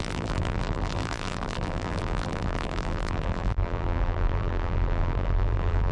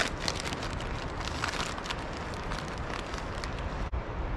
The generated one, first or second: first